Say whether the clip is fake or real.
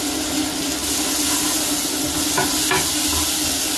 real